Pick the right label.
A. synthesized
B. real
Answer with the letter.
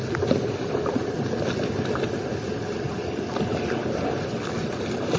B